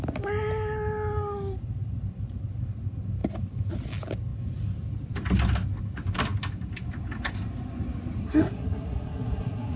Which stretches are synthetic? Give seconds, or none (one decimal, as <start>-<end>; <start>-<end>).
8.2-9.8